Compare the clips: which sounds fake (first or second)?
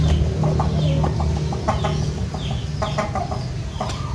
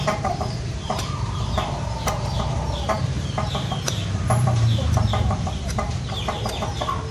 second